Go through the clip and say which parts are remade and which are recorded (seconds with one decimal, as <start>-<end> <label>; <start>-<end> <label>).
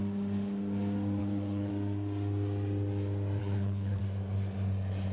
0.0-1.2 recorded; 1.2-1.7 remade; 1.7-3.4 recorded; 3.4-4.0 remade; 4.0-5.1 recorded